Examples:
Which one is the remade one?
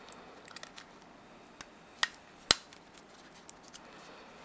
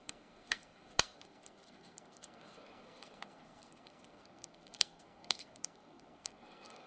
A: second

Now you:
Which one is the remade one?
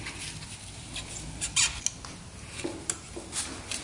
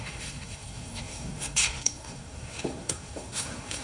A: second